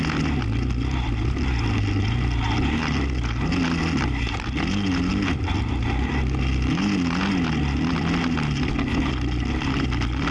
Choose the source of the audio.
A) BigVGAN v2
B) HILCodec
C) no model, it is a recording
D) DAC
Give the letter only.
C